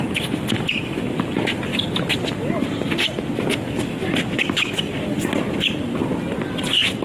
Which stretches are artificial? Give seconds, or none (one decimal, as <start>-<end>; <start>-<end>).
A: none